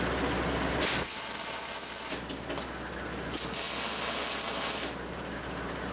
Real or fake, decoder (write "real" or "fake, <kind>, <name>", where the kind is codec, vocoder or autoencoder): real